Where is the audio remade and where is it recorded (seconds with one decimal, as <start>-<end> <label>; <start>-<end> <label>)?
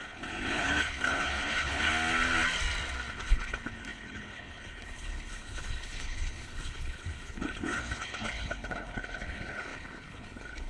0.0-1.9 remade; 1.9-3.1 recorded; 3.1-10.7 remade